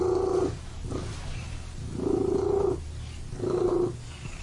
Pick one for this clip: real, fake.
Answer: real